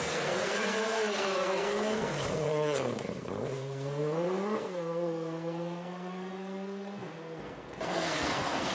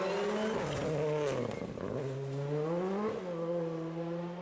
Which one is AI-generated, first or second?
first